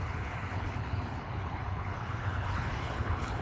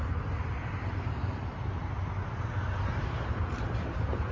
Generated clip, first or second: first